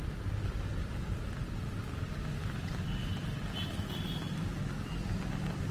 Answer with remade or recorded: recorded